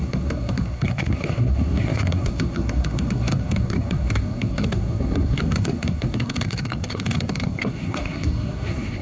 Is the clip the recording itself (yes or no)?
no